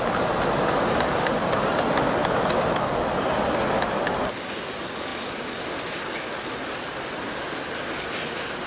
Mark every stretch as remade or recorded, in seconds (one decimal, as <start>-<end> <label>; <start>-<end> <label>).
0.0-8.7 recorded